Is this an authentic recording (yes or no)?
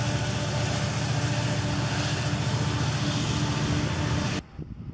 yes